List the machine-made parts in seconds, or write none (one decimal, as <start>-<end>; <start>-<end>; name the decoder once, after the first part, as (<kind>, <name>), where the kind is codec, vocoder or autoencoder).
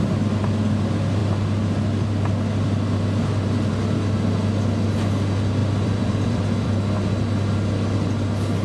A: 5.6-6.7 (vocoder, BigVGAN v2)